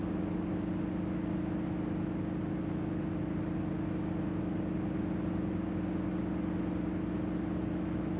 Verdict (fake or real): real